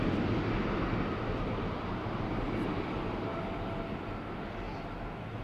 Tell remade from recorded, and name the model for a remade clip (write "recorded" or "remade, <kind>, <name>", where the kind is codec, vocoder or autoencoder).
recorded